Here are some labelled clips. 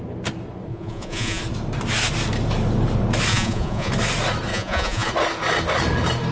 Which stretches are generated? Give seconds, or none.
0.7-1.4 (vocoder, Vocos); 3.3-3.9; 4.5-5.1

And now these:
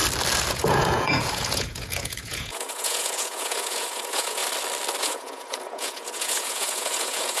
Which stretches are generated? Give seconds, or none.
0.5-4.4 (vocoder, Vocos); 5.0-7.4

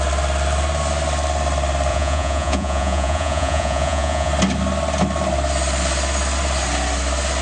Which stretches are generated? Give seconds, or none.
1.9-4.3 (vocoder, Vocos)

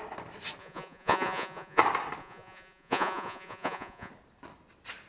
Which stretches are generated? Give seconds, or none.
0.6-1.8 (vocoder, Vocos); 2.2-4.1

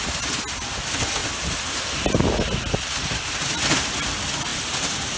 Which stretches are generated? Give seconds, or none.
none